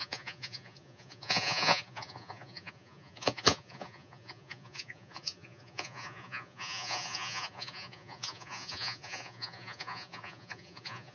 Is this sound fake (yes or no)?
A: yes